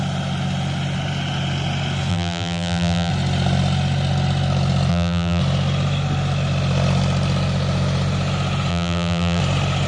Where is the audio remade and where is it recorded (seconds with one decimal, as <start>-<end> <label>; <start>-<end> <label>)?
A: 0.0-2.1 recorded; 2.1-3.1 remade; 3.1-4.9 recorded; 4.9-5.4 remade; 5.4-8.7 recorded; 8.7-9.4 remade; 9.4-9.9 recorded